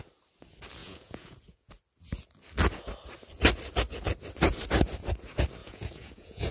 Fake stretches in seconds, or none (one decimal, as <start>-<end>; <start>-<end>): 0.8-1.7; 5.6-6.5

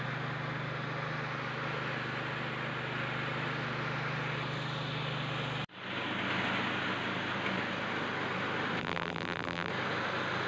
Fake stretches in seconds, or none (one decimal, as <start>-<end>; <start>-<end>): 8.8-9.7

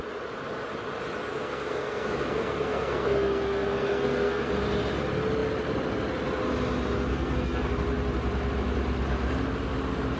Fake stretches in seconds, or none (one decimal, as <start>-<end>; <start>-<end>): 1.3-4.5; 7.1-7.7

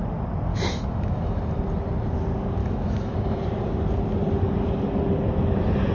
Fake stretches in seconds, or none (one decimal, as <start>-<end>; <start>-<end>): 0.5-1.6; 2.6-3.4